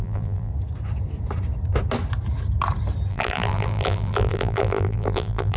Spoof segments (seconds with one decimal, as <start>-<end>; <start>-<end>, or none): 0.0-0.5; 3.1-5.6